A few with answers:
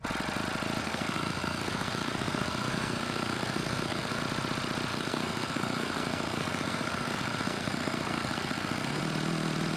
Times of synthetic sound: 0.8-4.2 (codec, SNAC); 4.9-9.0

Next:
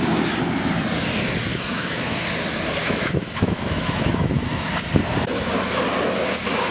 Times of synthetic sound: 1.5-2.2 (autoencoder, DAC-VAE); 2.8-4.7

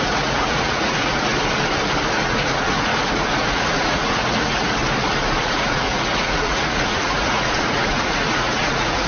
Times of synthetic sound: 0.0-1.3 (vocoder, Vocos); 2.1-4.8; 5.4-9.1